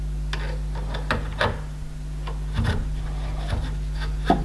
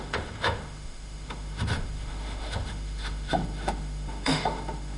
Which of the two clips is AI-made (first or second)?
second